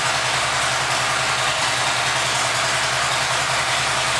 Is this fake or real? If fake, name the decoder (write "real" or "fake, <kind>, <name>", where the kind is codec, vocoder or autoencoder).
real